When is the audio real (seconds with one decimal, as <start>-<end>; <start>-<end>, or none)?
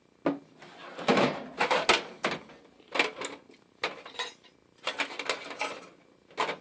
0.0-6.6